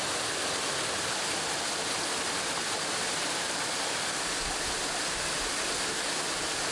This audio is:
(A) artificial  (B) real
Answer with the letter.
B